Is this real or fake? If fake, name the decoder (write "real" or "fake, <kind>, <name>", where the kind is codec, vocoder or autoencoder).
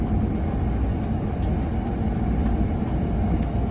real